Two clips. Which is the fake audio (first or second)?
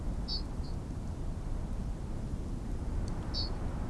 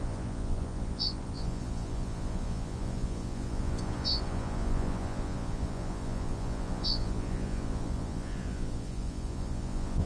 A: second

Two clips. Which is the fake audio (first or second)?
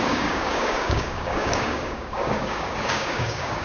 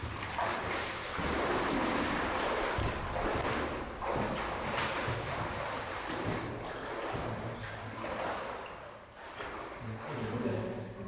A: first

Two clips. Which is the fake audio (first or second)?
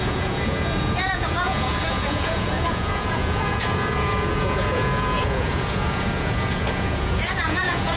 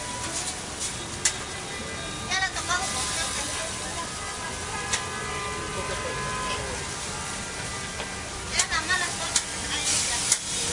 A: first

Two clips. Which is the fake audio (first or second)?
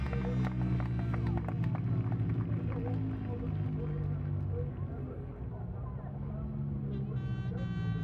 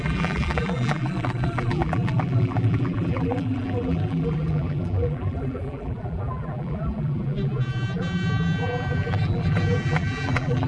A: second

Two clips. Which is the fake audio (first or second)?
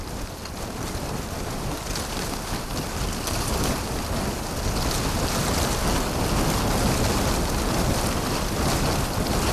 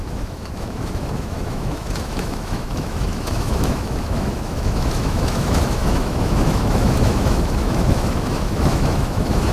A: second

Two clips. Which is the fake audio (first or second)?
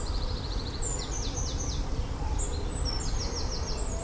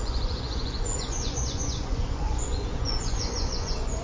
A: second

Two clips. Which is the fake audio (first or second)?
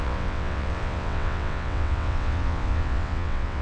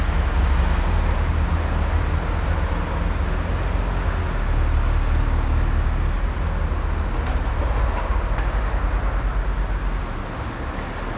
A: first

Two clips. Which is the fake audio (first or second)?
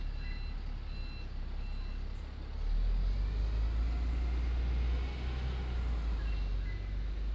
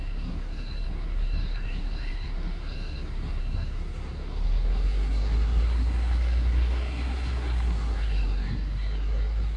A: second